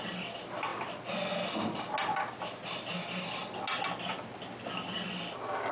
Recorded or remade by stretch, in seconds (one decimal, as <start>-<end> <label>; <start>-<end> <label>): 0.0-5.7 recorded